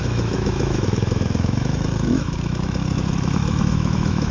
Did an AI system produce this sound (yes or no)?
yes